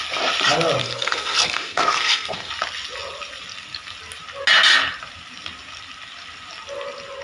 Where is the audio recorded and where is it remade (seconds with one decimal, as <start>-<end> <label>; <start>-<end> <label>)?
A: 0.0-0.8 recorded; 0.8-2.5 remade; 2.5-7.2 recorded